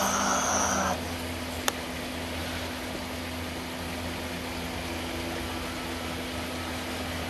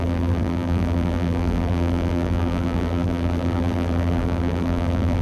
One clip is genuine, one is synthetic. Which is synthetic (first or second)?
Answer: second